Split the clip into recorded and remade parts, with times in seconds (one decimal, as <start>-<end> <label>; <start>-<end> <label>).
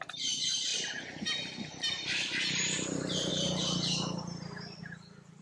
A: 0.0-5.4 remade